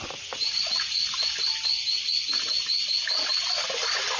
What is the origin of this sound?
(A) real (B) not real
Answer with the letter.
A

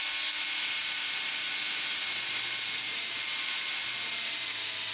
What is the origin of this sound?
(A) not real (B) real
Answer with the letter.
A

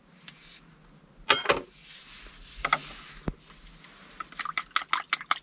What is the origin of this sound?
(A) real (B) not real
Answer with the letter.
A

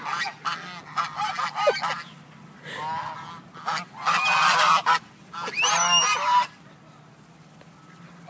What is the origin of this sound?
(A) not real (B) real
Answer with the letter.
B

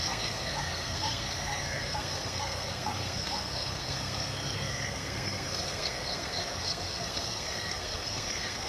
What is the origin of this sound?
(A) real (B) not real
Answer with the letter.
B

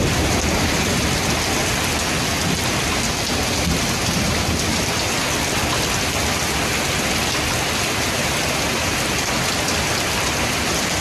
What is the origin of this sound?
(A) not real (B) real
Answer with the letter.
B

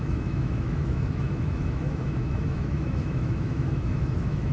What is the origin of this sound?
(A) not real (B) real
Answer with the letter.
A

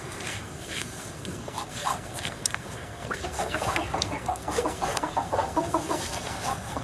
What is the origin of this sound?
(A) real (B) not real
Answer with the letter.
B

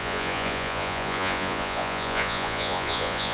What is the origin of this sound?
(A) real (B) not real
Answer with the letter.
B